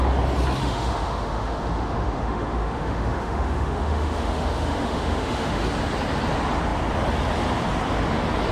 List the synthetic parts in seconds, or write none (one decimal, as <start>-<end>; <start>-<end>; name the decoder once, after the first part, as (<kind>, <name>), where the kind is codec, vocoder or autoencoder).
0.6-5.6 (autoencoder, DAC-VAE)